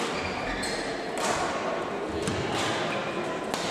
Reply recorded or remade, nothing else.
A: recorded